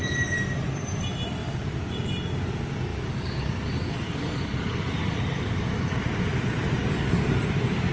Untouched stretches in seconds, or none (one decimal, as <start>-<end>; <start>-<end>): 0.0-2.9; 6.0-6.8; 7.4-7.9